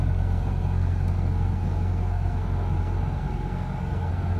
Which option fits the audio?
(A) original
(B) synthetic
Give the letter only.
B